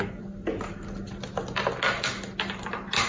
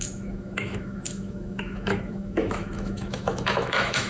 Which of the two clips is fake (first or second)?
second